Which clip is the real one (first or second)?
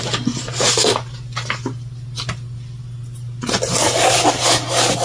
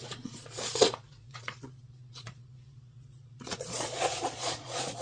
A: first